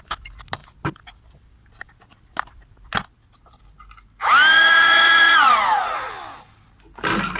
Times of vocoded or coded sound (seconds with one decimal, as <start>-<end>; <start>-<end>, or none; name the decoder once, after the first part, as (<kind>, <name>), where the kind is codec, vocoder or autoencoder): 4.5-6.1 (vocoder, Vocos)